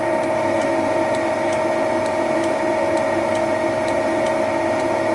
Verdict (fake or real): real